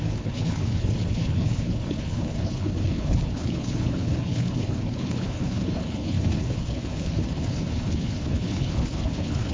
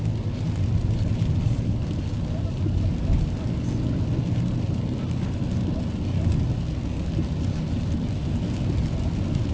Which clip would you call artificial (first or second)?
first